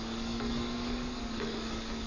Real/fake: fake